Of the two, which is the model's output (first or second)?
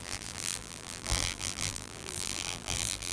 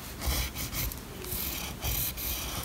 first